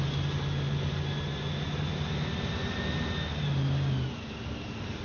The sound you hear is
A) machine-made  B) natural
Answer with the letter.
B